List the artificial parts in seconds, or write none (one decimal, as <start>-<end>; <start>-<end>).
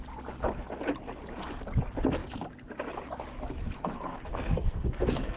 4.3-5.4